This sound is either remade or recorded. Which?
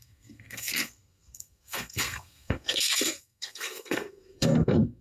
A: remade